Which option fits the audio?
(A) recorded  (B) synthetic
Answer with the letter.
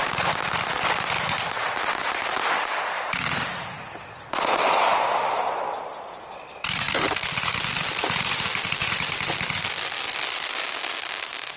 A